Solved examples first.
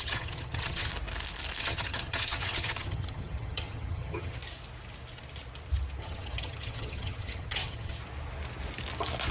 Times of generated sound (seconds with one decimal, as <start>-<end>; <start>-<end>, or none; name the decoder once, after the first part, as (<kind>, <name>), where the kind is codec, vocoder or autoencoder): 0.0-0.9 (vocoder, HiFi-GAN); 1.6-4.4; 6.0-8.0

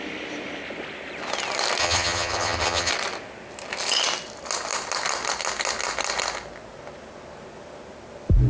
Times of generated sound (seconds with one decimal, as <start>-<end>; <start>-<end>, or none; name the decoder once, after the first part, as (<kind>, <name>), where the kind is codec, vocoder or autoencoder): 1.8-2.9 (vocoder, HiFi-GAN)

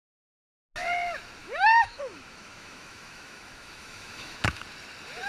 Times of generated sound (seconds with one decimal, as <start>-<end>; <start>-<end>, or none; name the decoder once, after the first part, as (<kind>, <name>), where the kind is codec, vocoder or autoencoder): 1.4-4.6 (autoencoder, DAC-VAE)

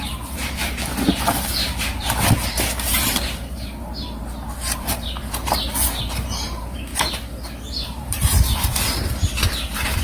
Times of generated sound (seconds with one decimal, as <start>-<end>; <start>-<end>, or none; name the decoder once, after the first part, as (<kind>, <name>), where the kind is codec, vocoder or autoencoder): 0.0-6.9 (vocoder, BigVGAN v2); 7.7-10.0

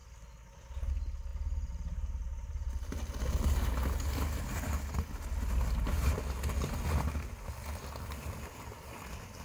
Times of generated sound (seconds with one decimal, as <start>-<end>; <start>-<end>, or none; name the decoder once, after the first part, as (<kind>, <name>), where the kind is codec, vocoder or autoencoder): 1.3-2.7 (vocoder, BigVGAN v2)

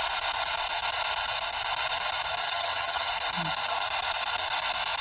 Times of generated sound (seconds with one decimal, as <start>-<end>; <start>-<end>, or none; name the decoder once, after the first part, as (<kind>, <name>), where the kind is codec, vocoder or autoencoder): 2.4-3.1 (vocoder, HiFi-GAN)